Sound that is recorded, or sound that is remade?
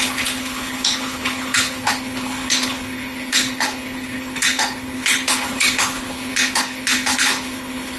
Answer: remade